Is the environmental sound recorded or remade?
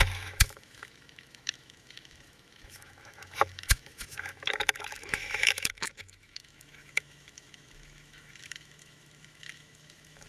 remade